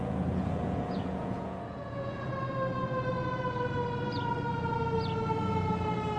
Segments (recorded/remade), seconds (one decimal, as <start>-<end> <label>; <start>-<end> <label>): 0.0-2.3 remade; 2.3-6.2 recorded

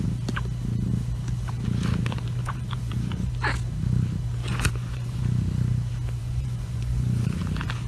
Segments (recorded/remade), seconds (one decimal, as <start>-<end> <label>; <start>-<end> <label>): 0.0-2.4 recorded; 2.4-3.3 remade; 3.3-4.4 recorded; 4.4-5.2 remade; 5.2-6.2 recorded; 6.2-7.4 remade; 7.4-7.9 recorded